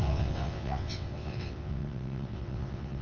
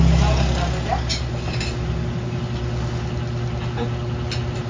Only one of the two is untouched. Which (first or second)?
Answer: second